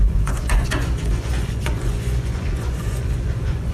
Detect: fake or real fake